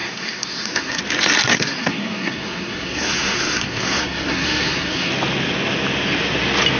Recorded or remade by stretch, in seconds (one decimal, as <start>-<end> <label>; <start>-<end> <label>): 0.0-1.0 remade; 1.0-1.5 recorded; 1.5-5.1 remade; 5.1-6.8 recorded

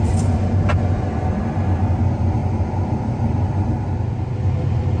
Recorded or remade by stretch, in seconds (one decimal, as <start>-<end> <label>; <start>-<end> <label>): 0.0-2.4 recorded; 2.4-3.8 remade; 3.8-5.0 recorded

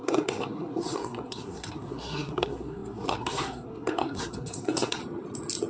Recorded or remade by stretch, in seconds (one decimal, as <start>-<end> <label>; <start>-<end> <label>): 0.0-5.0 remade; 5.0-5.7 recorded

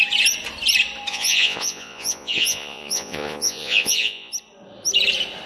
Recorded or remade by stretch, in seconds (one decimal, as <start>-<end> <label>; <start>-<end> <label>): 0.0-1.1 recorded; 1.1-4.3 remade; 4.3-5.5 recorded

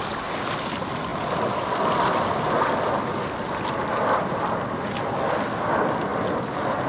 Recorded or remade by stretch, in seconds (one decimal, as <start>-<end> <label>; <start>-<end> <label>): 0.0-6.9 recorded

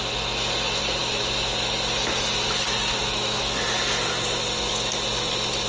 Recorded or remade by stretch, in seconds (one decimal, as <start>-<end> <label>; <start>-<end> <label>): 0.0-1.0 recorded; 1.0-1.7 remade; 1.7-3.0 recorded; 3.0-3.6 remade; 3.6-5.7 recorded